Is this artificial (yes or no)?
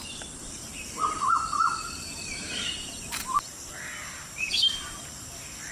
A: yes